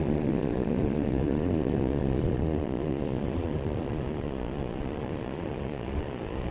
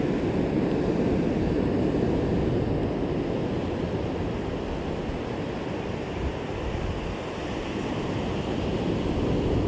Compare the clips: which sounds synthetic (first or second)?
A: first